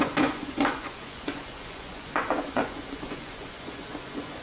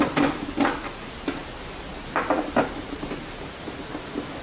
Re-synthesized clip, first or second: first